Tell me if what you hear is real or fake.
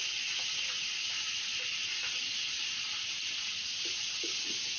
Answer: real